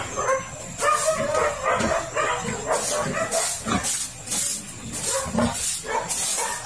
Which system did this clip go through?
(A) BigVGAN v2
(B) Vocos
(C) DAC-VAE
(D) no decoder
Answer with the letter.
D